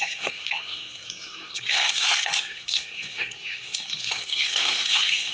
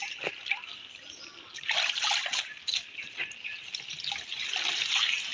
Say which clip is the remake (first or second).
first